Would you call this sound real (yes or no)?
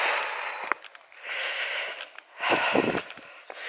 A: yes